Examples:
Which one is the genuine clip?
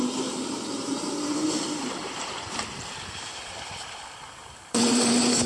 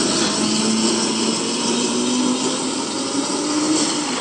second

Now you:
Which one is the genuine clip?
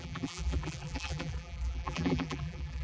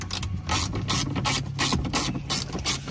second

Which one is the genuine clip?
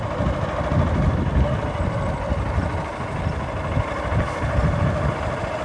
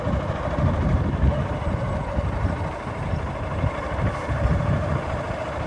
first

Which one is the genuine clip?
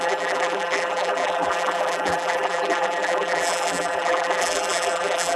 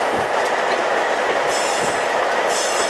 second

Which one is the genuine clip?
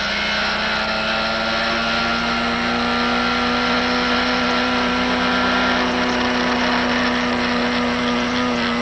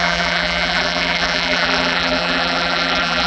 first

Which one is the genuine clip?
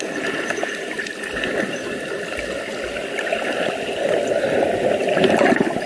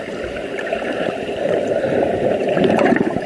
first